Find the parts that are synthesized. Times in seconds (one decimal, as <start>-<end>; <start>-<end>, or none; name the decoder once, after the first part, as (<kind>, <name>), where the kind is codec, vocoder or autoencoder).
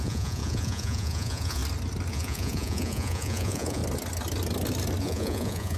0.0-1.6 (vocoder, Vocos); 2.1-3.8; 5.0-5.8